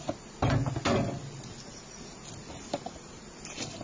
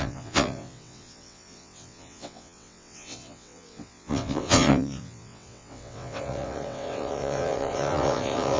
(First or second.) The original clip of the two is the first